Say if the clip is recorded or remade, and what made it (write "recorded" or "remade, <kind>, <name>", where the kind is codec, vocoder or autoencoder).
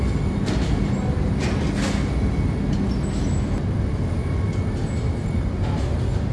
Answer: recorded